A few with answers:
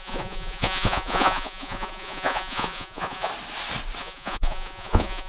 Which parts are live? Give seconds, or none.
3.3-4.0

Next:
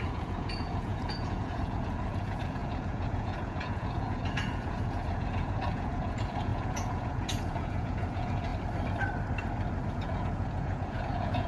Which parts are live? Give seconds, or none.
8.5-9.9

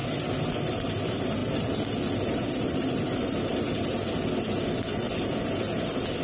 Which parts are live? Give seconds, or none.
0.0-6.2

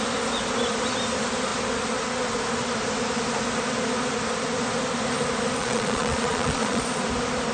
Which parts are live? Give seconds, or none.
0.0-5.6; 6.8-7.5